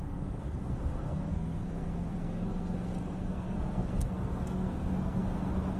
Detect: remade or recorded remade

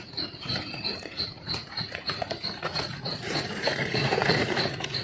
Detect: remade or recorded remade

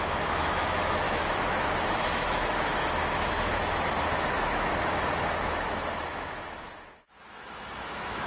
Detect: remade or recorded remade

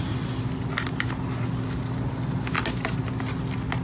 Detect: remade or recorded recorded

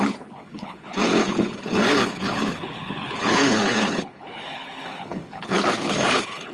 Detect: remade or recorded remade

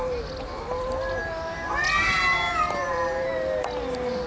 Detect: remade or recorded recorded